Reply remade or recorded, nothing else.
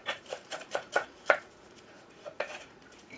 remade